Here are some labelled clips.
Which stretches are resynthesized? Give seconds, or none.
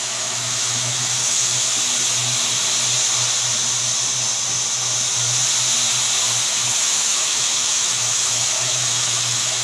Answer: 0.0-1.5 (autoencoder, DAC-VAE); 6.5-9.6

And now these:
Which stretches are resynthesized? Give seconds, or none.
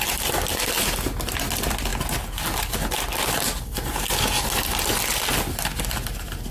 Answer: none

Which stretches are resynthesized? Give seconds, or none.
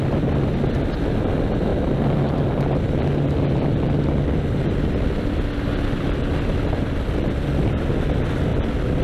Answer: none